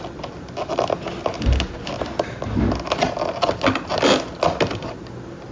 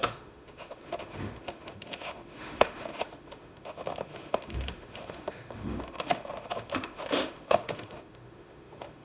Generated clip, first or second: second